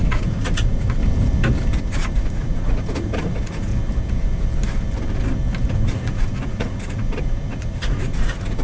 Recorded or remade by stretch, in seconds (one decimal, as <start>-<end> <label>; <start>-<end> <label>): 0.0-1.0 remade; 1.0-1.8 recorded; 1.8-3.7 remade; 3.7-5.7 recorded; 5.7-8.6 remade